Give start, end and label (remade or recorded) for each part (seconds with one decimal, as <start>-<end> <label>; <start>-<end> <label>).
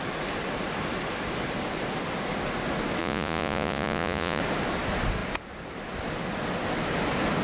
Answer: 0.0-3.0 recorded; 3.0-4.4 remade; 4.4-7.4 recorded